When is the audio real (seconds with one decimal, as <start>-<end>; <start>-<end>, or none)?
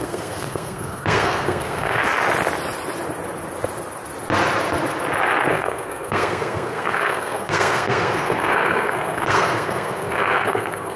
2.0-5.5